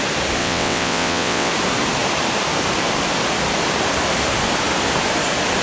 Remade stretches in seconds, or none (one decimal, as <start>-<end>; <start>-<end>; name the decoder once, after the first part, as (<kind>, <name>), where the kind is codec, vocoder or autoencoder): 0.4-1.5 (vocoder, WaveNeXt)